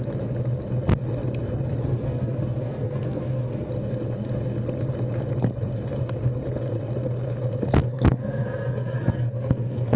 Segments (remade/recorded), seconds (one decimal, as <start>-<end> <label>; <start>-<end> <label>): 0.0-1.8 recorded; 1.8-3.7 remade; 3.7-7.8 recorded; 7.8-10.0 remade